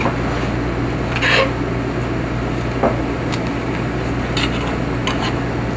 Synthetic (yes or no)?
no